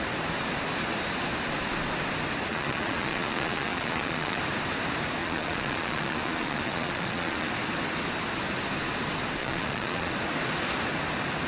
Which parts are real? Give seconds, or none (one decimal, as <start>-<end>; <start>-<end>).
0.0-2.5; 4.4-5.2; 7.5-9.4; 10.1-11.5